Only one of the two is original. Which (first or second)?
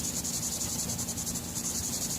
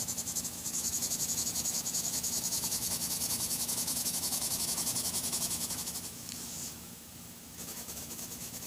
first